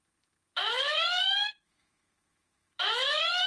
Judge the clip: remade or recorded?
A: remade